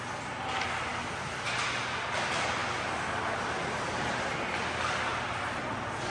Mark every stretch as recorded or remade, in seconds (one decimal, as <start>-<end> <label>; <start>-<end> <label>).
0.0-0.9 recorded; 0.9-1.8 remade; 1.8-5.1 recorded; 5.1-6.1 remade